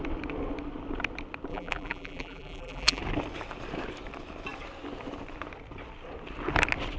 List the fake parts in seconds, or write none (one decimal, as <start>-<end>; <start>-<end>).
1.5-3.0